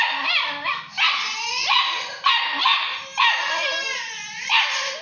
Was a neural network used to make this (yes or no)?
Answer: no